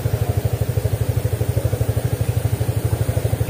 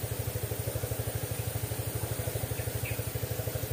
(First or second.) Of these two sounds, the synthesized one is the first